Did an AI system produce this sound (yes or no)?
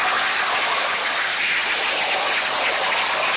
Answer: no